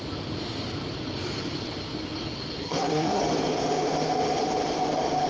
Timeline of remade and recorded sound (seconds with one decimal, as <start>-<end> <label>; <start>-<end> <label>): 0.0-2.6 recorded; 2.6-3.2 remade; 3.2-5.3 recorded